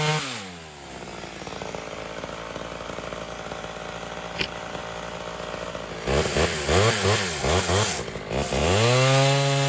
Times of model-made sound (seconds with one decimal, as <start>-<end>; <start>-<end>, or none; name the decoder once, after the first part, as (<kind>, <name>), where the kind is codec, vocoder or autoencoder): none